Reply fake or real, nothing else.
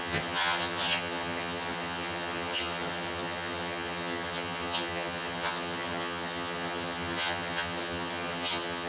fake